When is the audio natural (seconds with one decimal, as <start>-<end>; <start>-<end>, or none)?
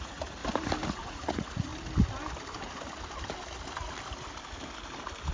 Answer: 0.4-0.9; 1.7-5.3